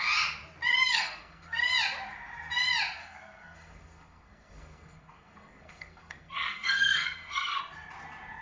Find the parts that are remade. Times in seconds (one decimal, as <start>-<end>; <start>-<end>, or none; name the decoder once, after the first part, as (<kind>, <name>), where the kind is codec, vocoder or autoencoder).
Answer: 0.7-1.7 (codec, SNAC); 3.0-7.6